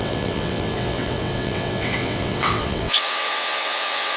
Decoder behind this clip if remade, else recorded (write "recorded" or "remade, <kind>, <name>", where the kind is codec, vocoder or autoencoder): remade, vocoder, WaveNeXt